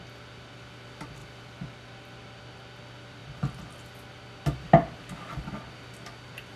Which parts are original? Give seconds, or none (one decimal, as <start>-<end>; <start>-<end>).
0.0-1.2; 2.4-6.6